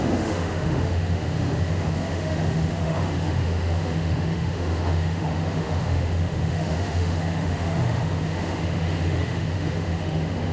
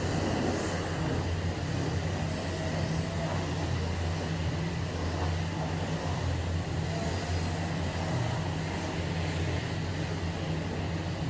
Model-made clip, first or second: first